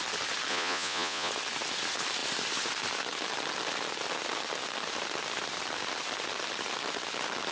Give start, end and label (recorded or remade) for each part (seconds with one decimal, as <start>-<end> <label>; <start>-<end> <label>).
0.0-0.5 recorded; 0.5-1.3 remade; 1.3-7.5 recorded